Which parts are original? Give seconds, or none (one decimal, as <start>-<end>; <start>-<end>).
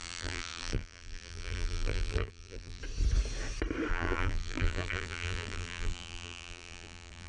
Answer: 2.8-3.9